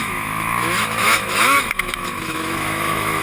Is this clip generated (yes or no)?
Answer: yes